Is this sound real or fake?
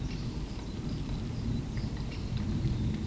real